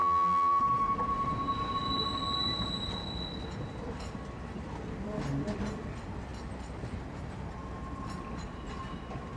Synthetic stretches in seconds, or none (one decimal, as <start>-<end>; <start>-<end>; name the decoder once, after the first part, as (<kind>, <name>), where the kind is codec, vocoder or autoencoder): 0.0-0.6 (vocoder, BigVGAN v2)